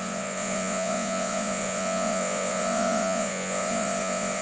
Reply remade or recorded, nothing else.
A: remade